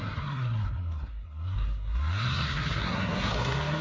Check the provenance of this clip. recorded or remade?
remade